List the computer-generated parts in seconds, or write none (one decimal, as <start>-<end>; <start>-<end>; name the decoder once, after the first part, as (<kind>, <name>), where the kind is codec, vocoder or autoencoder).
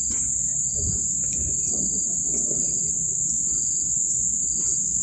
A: 0.5-3.0 (vocoder, BigVGAN v2)